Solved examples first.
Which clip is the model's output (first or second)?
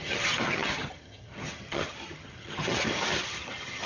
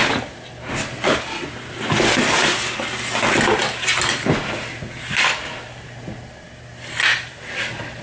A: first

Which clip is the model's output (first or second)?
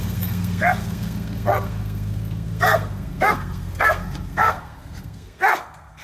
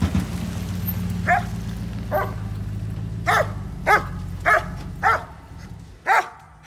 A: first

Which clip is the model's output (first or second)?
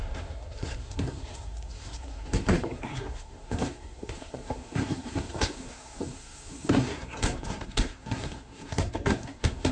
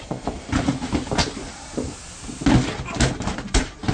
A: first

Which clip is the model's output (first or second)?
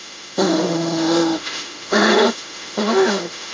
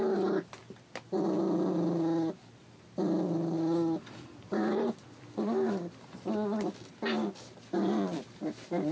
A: first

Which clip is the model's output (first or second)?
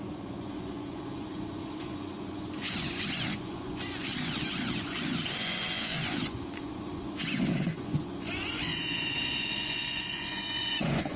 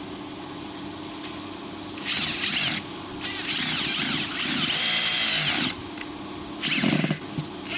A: first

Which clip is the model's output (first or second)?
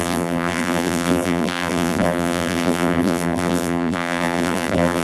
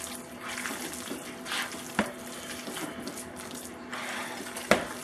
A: first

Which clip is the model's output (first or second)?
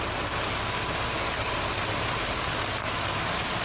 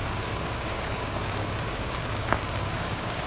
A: second